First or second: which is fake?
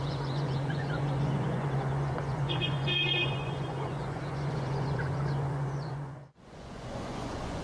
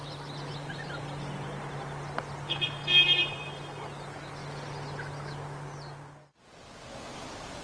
first